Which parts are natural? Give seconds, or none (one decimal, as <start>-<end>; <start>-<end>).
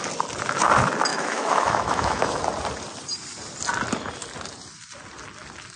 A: 0.0-1.1; 2.4-5.8